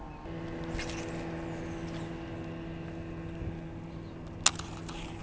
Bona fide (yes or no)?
yes